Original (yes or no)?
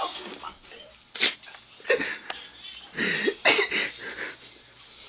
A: yes